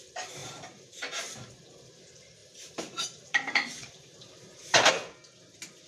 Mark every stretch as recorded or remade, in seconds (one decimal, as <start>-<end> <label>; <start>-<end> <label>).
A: 0.0-0.4 recorded; 0.4-1.5 remade; 1.5-2.4 recorded; 2.4-4.9 remade; 4.9-5.9 recorded